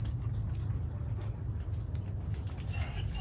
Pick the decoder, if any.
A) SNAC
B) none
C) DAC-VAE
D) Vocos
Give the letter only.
B